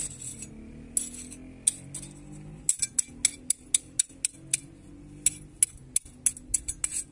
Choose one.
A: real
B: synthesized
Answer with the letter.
A